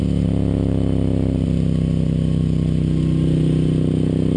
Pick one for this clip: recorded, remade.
recorded